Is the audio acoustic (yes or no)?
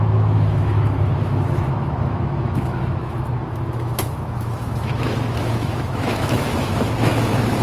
no